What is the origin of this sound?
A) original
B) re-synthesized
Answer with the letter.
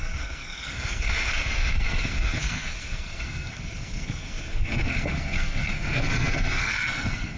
B